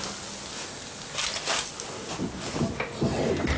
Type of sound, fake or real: real